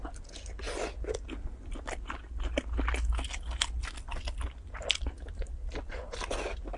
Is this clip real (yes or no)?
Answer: yes